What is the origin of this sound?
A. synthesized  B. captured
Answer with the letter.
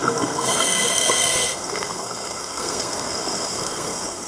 A